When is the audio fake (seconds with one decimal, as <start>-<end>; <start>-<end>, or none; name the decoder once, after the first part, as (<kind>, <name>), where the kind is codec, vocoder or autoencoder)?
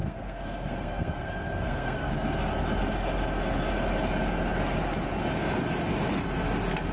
0.0-2.1 (codec, SNAC)